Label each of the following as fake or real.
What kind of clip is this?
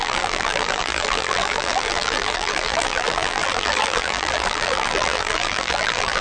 fake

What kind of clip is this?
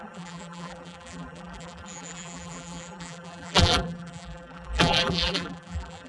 fake